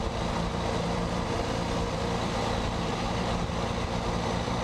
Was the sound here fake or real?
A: fake